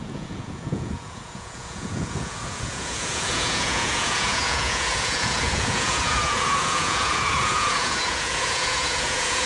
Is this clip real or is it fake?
fake